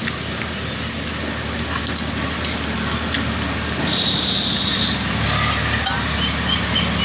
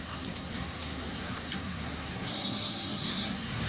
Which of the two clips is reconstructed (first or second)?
second